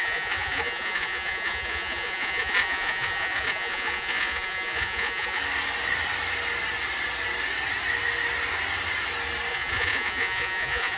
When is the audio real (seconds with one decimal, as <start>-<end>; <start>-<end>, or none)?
5.4-9.5